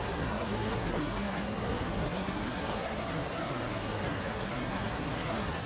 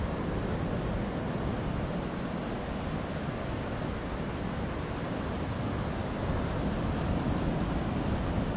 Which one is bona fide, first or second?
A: second